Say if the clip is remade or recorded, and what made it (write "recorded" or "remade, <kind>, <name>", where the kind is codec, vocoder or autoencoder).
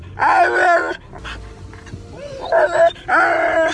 recorded